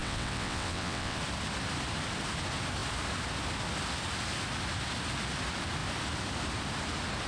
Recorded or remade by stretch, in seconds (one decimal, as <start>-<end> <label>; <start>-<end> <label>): 0.0-1.2 remade; 1.2-7.3 recorded

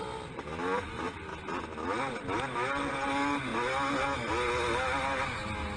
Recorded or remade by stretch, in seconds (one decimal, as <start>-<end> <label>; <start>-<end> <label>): 0.0-5.8 recorded

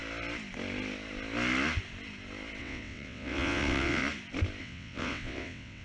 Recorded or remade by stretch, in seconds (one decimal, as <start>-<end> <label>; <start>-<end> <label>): 0.0-2.6 recorded; 2.6-4.0 remade; 4.0-4.6 recorded; 4.6-5.8 remade

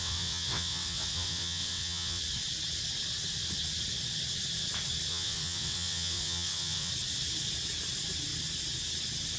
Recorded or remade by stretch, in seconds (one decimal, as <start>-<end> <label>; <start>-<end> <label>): 0.0-2.2 remade; 2.2-5.1 recorded; 5.1-6.9 remade; 6.9-9.4 recorded

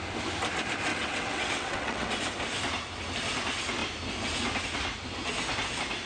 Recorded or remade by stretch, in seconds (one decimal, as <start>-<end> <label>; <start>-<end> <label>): 0.0-0.9 recorded; 0.9-2.1 remade; 2.1-6.1 recorded

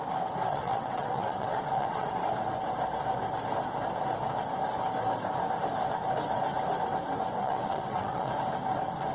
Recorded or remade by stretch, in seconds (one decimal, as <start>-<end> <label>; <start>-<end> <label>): 0.0-0.5 recorded; 0.5-2.1 remade; 2.1-7.4 recorded; 7.4-8.3 remade; 8.3-9.1 recorded

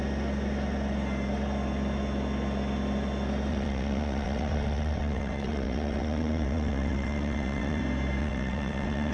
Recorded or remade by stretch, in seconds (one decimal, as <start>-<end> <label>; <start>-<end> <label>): 0.0-3.5 recorded; 3.5-7.8 remade; 7.8-8.2 recorded; 8.2-9.1 remade